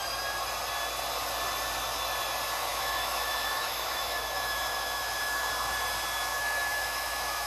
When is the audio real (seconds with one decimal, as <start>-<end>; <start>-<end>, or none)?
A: 0.0-2.7; 5.5-6.3